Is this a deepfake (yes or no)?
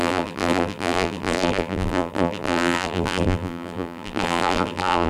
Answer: yes